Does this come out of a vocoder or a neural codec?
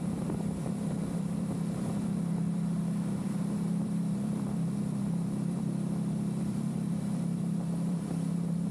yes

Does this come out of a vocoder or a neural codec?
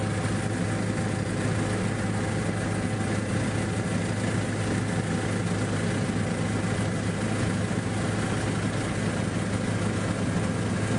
no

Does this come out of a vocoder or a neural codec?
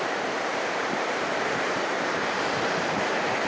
yes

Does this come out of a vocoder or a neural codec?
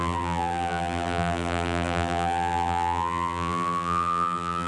yes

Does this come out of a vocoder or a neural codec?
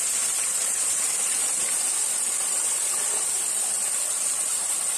yes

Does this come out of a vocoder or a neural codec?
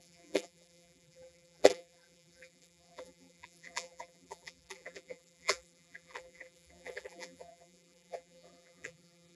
yes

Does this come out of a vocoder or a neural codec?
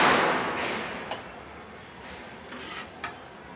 no